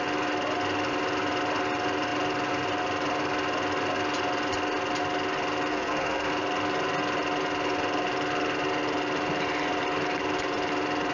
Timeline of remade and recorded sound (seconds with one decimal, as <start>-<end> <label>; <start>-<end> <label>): 0.0-5.7 recorded; 5.7-6.3 remade; 6.3-11.1 recorded